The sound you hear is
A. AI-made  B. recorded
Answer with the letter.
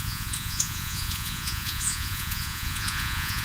A